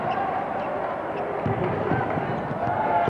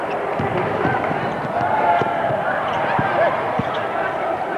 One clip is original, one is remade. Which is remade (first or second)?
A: second